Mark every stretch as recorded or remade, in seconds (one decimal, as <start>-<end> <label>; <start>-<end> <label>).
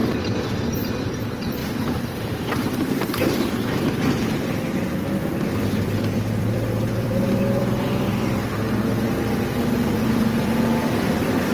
0.0-0.9 remade; 0.9-1.6 recorded; 1.6-2.4 remade; 2.4-5.2 recorded; 5.2-8.6 remade; 8.6-11.5 recorded